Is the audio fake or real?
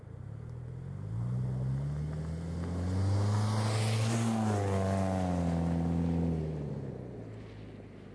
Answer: real